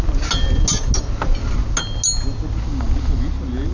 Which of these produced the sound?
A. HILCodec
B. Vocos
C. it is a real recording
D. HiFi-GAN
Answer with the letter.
C